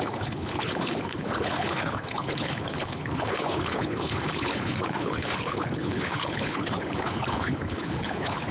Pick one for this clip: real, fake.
fake